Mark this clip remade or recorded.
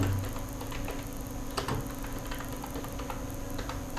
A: recorded